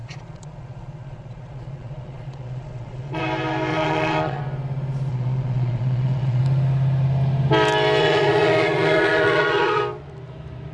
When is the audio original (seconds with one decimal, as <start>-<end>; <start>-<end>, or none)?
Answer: 3.2-3.7; 4.4-5.1; 6.4-8.0; 9.8-10.7